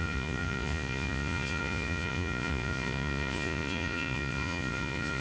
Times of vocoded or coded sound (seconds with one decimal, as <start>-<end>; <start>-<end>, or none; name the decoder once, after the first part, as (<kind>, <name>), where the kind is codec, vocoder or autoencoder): 0.0-5.2 (vocoder, Vocos)